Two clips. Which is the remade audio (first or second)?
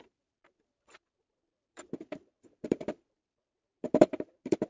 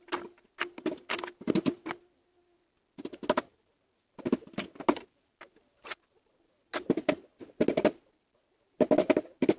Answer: first